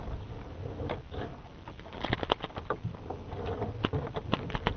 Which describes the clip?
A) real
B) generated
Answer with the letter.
B